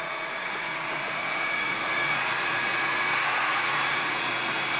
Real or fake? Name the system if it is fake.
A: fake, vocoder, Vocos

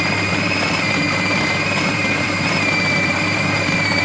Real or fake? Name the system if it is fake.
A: fake, vocoder, BigVGAN v2